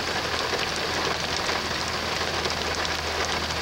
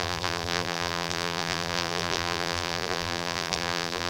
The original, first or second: first